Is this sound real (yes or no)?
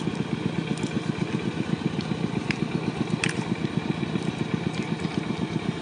yes